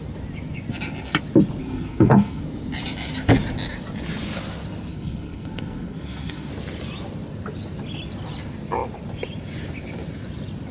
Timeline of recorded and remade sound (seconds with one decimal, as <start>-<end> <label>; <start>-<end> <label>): 0.0-1.6 recorded; 1.6-2.4 remade; 2.4-4.9 recorded; 4.9-6.5 remade; 6.5-10.7 recorded